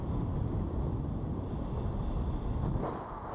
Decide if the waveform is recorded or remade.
recorded